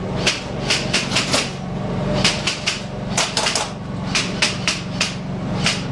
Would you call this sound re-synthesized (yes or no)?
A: yes